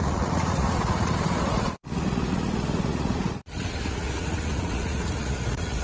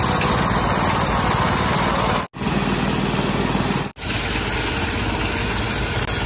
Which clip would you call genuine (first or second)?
second